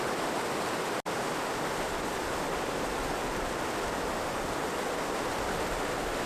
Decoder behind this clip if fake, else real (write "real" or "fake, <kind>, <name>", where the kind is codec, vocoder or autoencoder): real